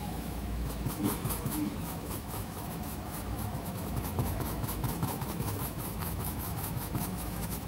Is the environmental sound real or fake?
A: fake